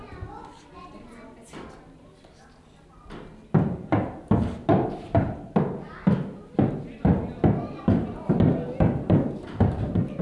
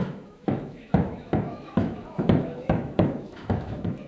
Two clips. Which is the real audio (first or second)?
first